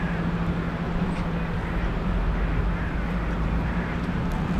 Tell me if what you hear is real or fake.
real